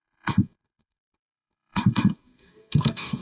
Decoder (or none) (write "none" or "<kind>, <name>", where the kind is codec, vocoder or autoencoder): codec, SNAC